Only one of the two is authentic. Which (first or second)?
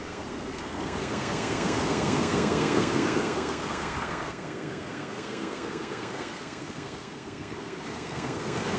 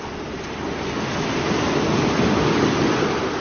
second